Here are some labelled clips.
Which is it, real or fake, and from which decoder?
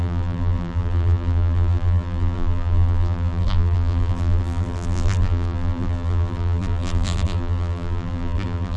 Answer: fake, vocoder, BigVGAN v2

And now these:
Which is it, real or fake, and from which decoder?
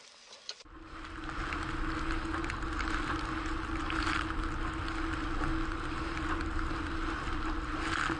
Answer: real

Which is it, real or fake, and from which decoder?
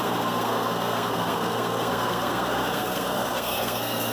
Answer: fake, codec, SNAC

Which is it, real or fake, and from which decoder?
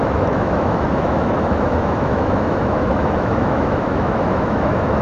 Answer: fake, autoencoder, DAC-VAE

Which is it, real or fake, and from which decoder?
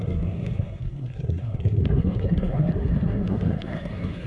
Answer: fake, codec, SNAC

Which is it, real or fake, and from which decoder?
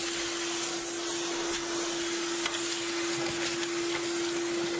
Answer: real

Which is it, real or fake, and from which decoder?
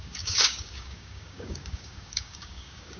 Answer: fake, codec, DAC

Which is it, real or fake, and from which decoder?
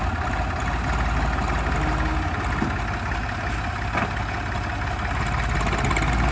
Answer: real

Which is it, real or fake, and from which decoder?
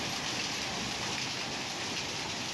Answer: real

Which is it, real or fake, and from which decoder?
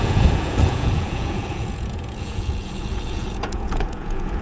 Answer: fake, vocoder, Vocos